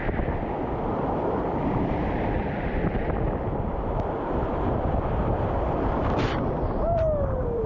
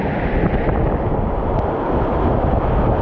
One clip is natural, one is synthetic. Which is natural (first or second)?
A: second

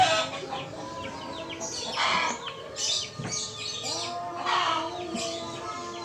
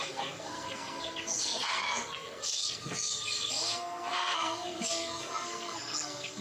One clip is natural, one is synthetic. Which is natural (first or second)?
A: first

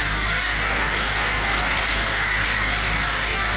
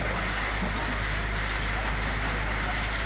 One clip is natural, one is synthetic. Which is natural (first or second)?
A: second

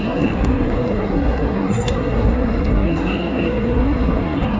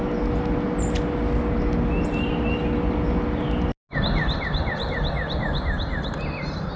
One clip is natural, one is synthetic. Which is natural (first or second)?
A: second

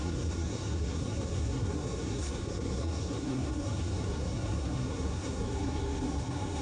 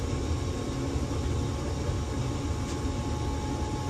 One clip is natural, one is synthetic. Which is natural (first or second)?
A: second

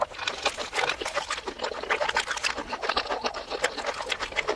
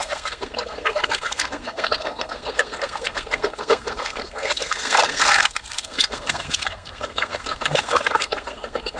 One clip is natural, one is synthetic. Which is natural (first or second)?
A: first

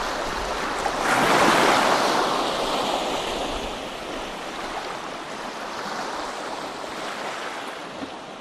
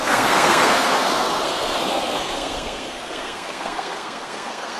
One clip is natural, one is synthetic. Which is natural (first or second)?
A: first